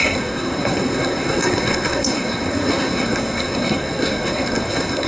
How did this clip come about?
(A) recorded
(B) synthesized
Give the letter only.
B